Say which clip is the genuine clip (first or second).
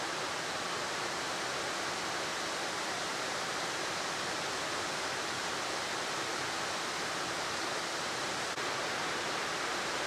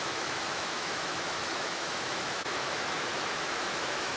first